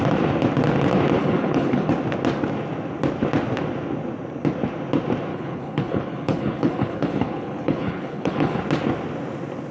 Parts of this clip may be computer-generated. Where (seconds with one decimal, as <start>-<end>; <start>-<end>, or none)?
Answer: 1.2-1.9; 5.3-8.6